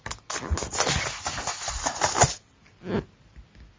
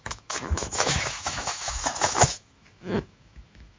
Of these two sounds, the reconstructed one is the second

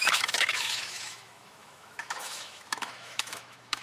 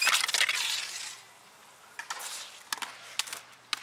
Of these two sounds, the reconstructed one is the first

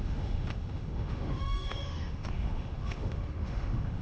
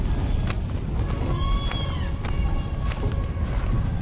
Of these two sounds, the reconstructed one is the first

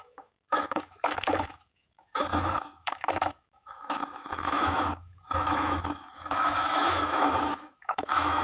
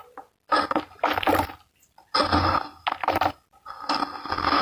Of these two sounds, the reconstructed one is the first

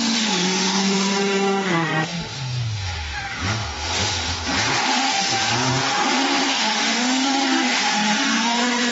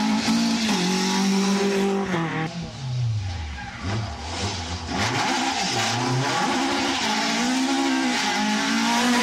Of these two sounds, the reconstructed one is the first